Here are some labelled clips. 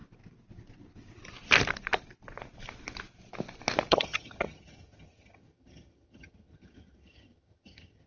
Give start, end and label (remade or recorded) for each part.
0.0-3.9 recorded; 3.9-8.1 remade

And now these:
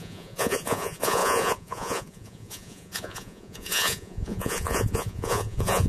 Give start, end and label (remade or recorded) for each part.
0.0-5.9 remade

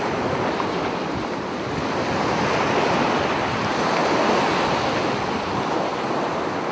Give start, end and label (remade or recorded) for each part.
0.0-6.7 recorded

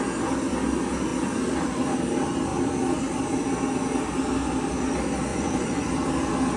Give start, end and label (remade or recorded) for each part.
0.0-5.3 recorded; 5.3-5.9 remade; 5.9-6.6 recorded

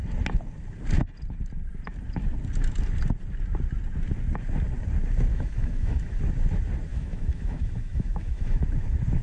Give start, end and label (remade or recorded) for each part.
0.0-5.3 recorded; 5.3-6.2 remade; 6.2-6.9 recorded; 6.9-8.6 remade; 8.6-9.2 recorded

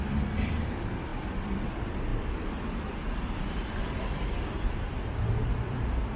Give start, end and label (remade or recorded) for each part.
0.0-1.1 recorded; 1.1-1.7 remade; 1.7-2.1 recorded; 2.1-5.8 remade; 5.8-6.2 recorded